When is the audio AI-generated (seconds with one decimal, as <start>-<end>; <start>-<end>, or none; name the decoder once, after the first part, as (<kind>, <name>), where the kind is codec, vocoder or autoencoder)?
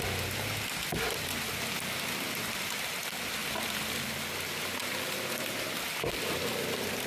none